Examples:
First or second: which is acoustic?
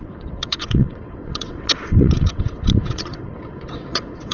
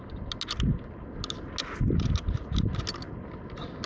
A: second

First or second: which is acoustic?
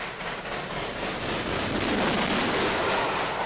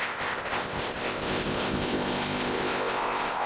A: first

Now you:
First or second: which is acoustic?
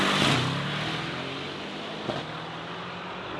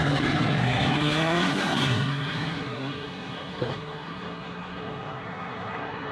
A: first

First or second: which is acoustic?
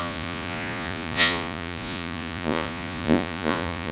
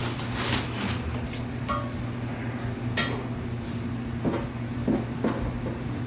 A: second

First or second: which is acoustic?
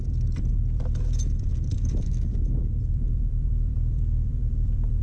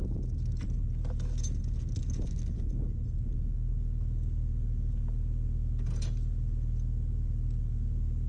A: second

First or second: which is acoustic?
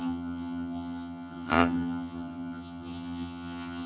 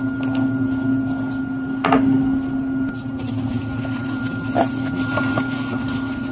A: second